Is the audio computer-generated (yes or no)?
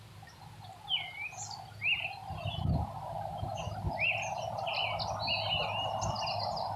no